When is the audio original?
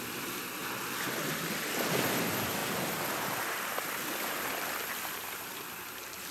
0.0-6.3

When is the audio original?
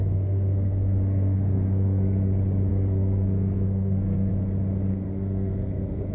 2.3-2.7; 4.3-4.9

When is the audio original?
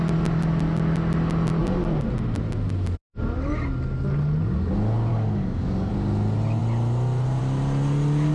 0.0-5.1; 5.9-8.3